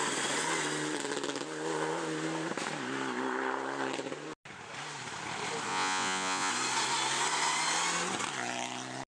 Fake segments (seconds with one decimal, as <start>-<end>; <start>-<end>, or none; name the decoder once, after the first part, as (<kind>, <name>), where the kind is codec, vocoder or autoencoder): 5.7-6.5 (vocoder, Vocos)